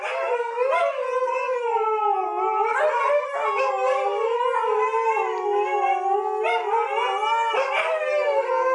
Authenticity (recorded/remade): recorded